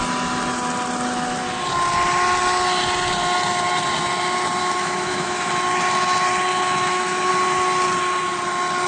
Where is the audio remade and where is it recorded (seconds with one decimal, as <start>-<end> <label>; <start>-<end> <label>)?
0.0-4.6 recorded; 4.6-5.5 remade; 5.5-6.5 recorded; 6.5-7.3 remade; 7.3-8.9 recorded